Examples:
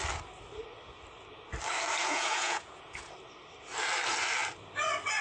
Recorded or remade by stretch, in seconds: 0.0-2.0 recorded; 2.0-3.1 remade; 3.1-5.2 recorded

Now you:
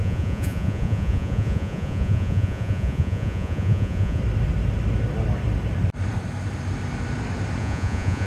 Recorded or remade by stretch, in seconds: 0.0-4.2 remade; 4.2-7.6 recorded; 7.6-8.3 remade

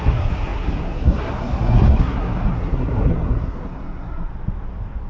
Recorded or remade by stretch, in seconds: 0.0-4.3 remade; 4.3-5.1 recorded

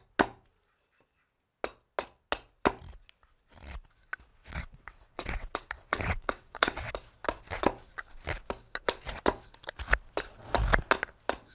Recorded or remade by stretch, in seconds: 0.0-4.3 recorded; 4.3-6.9 remade; 6.9-11.5 recorded

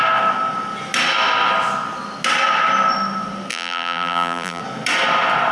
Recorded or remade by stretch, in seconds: 0.0-3.5 recorded; 3.5-4.6 remade; 4.6-5.5 recorded

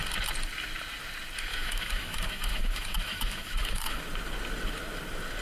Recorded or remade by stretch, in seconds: 0.0-1.5 recorded; 1.5-4.0 remade; 4.0-5.4 recorded

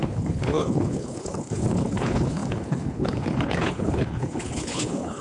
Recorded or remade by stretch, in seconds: 0.0-5.2 remade